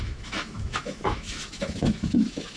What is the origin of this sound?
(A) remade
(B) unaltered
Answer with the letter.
A